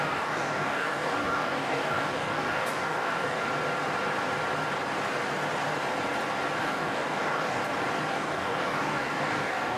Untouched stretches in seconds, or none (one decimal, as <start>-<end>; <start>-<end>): 3.4-6.6; 7.6-8.1

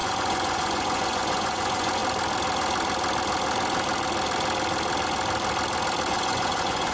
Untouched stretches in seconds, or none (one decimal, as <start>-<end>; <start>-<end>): 2.0-6.1

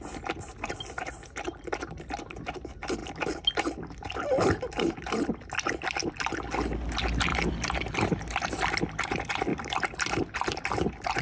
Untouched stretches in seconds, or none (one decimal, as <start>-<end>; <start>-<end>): 0.0-7.3; 8.1-9.5; 10.3-11.2

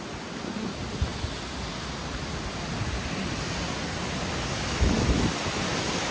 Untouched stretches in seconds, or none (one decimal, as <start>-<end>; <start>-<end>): 0.0-6.1

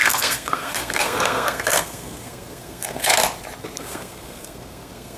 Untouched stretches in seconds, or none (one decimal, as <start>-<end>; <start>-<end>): 3.1-3.8

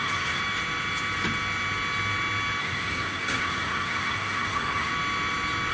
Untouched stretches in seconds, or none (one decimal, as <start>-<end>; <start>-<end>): 0.4-2.6; 4.9-5.7